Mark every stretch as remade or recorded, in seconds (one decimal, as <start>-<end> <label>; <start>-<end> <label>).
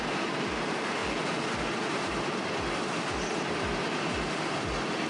0.0-5.1 recorded